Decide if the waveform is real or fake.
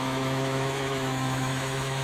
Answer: fake